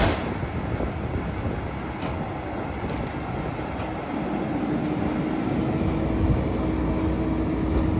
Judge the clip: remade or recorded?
recorded